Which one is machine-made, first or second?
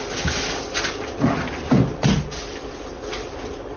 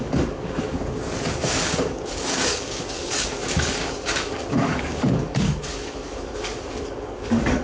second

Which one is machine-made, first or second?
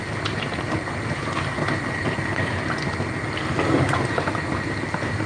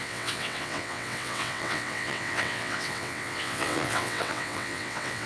second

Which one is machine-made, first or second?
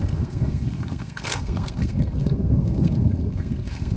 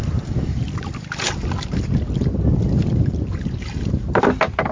first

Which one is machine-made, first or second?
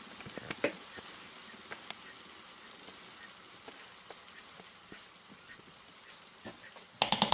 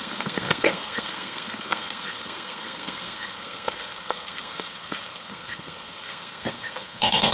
second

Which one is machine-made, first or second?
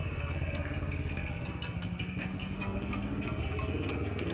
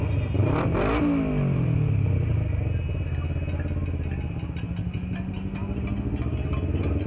first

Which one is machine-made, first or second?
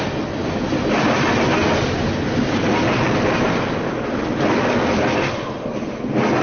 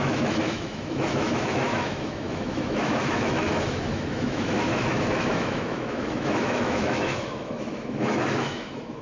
second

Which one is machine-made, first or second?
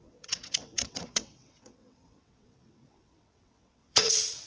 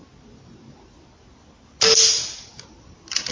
first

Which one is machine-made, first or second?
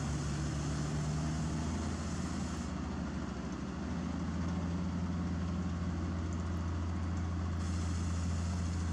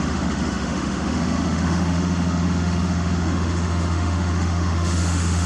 second